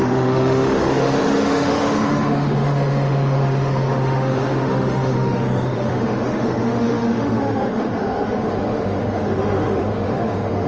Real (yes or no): no